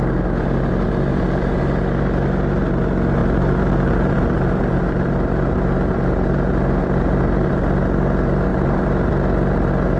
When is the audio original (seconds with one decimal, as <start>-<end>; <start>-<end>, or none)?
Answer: 0.0-1.1; 1.6-3.2; 7.6-8.5; 9.1-10.0